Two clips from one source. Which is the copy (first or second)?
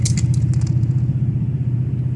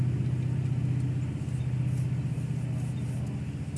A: first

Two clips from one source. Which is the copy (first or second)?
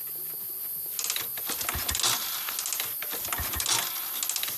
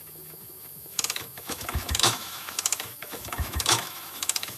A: second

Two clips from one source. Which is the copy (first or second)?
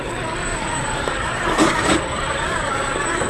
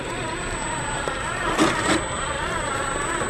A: first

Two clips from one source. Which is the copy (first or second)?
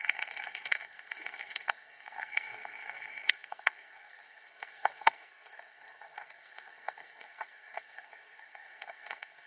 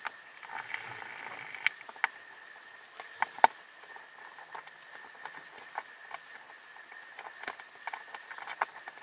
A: first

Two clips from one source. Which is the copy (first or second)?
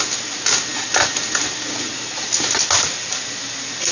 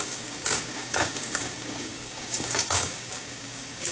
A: second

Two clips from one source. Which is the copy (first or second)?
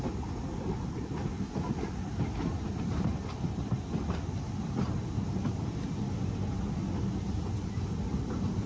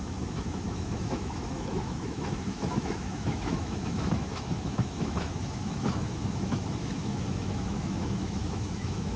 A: second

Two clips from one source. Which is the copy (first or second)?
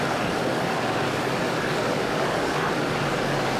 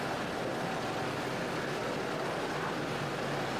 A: first